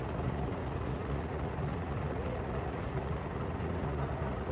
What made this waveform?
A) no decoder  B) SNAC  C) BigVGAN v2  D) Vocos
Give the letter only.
D